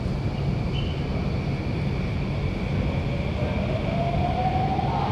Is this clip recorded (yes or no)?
yes